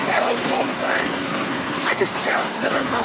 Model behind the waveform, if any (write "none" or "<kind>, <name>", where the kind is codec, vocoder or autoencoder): codec, SNAC